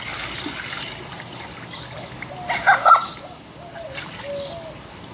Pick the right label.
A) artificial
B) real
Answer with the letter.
B